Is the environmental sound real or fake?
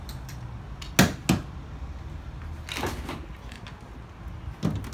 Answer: real